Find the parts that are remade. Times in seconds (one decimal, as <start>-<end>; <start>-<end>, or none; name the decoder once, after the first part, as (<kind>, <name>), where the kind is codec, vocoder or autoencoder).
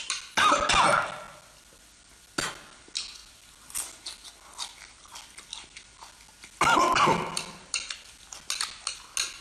none